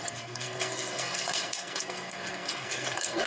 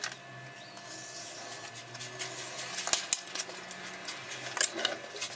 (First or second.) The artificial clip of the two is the first